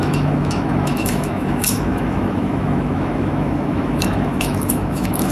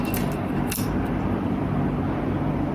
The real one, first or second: second